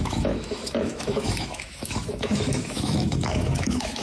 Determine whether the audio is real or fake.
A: fake